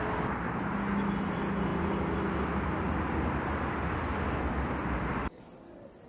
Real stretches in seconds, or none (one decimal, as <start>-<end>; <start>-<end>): 0.0-6.1